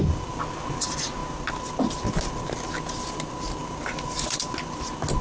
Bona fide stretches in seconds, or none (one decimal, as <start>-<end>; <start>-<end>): 0.0-5.2